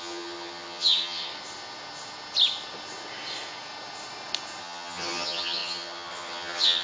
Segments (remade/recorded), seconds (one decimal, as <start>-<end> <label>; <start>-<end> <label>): 0.0-1.3 remade; 1.3-4.6 recorded; 4.6-6.8 remade